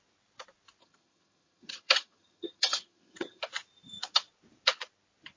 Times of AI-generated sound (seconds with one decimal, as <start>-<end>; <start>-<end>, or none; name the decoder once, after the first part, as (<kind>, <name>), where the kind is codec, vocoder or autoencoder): 0.8-3.4 (vocoder, HiFi-GAN)